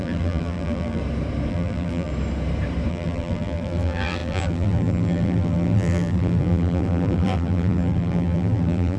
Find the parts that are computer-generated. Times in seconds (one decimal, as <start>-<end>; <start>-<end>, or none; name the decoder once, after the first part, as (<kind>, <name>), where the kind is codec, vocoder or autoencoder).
0.0-1.0 (vocoder, BigVGAN v2); 1.5-2.1; 2.9-9.0